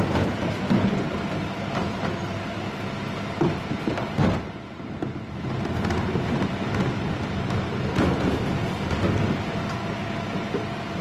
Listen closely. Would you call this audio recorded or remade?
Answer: recorded